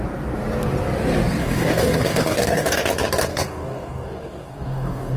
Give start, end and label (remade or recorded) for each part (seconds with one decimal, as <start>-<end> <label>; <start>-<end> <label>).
0.0-1.4 recorded; 1.4-2.9 remade; 2.9-3.3 recorded; 3.3-5.2 remade